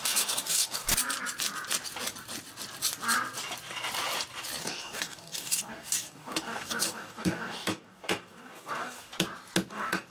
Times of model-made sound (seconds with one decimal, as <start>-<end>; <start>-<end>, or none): 0.0-0.9; 4.6-9.1; 9.7-10.1